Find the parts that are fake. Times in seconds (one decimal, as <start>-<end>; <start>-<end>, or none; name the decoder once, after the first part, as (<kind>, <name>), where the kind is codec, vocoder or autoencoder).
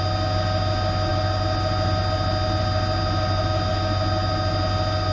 none